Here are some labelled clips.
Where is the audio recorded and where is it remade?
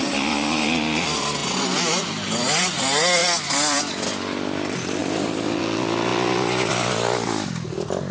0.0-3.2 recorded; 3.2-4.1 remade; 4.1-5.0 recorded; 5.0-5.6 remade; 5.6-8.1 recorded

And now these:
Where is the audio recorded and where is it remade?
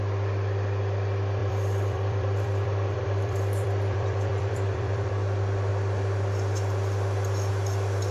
0.0-1.4 recorded; 1.4-5.1 remade; 5.1-8.1 recorded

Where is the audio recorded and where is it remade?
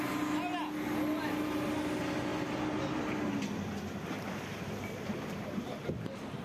0.0-2.3 recorded; 2.3-4.3 remade; 4.3-6.4 recorded